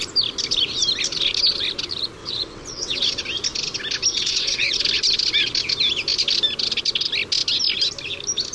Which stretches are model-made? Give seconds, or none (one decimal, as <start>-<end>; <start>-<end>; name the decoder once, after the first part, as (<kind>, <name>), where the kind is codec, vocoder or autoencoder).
2.2-3.2 (vocoder, WaveNeXt); 4.1-4.8